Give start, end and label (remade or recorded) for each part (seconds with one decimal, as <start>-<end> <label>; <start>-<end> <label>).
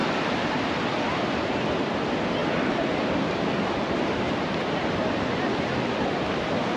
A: 0.0-6.8 recorded